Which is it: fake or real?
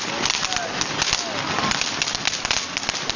real